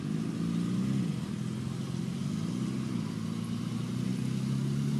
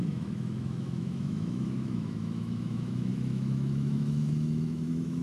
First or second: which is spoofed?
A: second